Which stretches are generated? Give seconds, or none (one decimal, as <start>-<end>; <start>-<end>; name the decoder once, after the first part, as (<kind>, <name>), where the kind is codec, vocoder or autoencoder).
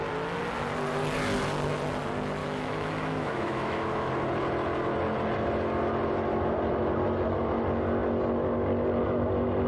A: 2.4-4.1 (autoencoder, DAC-VAE)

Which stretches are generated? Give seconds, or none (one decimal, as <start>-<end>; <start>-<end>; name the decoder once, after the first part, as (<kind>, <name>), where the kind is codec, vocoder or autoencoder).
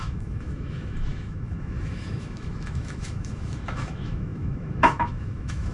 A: 0.0-5.7 (autoencoder, DAC-VAE)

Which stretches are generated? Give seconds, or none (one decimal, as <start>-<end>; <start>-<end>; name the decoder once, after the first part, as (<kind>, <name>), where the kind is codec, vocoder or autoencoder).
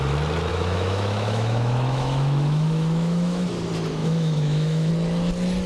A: 0.5-3.5 (autoencoder, DAC-VAE); 4.0-4.9